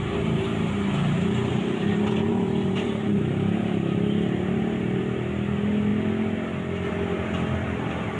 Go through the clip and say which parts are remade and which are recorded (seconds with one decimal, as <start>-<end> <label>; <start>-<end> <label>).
0.0-2.3 recorded; 2.3-5.0 remade; 5.0-8.2 recorded